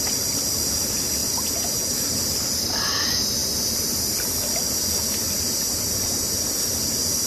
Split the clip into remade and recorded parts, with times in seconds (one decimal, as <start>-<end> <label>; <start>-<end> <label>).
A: 0.0-3.4 recorded; 3.4-4.2 remade; 4.2-7.3 recorded